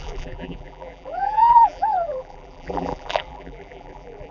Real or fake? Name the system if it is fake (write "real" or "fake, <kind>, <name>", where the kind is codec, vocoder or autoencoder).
fake, vocoder, BigVGAN v2